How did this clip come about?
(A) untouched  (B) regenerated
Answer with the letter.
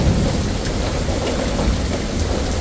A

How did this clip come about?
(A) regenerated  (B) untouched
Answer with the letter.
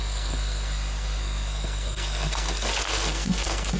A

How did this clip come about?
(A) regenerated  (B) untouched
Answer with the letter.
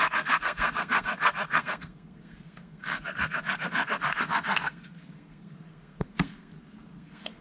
A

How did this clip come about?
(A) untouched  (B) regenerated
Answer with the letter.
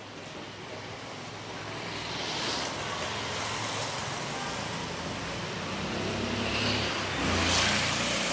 A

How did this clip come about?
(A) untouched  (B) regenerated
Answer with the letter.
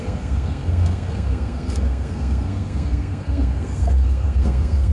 B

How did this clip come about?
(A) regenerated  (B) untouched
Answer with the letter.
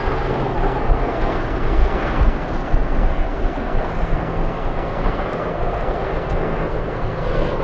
A